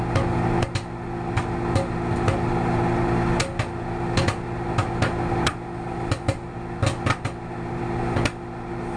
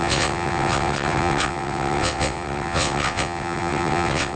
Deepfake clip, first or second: second